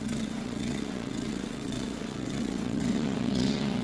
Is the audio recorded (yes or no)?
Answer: no